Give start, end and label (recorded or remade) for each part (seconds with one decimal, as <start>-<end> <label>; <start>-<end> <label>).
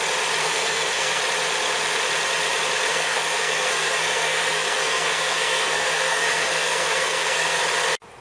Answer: 0.0-0.4 recorded; 0.4-1.2 remade; 1.2-2.9 recorded; 2.9-7.6 remade; 7.6-8.2 recorded